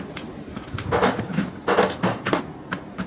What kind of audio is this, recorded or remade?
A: recorded